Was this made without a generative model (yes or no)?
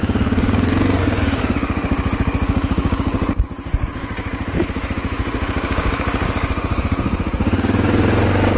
no